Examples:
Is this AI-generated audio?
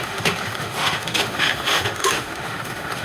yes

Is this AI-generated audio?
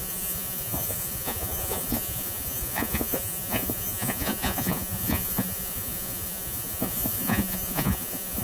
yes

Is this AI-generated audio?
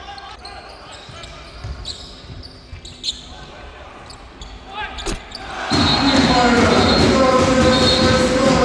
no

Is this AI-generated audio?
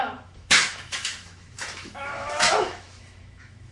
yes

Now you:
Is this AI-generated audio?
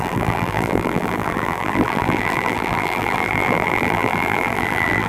yes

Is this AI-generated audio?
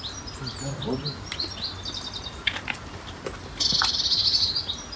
no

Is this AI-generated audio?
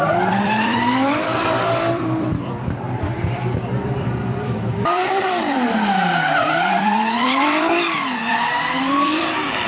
yes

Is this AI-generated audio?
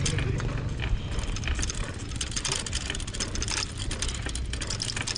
no